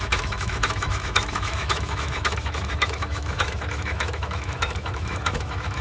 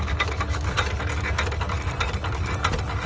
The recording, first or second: second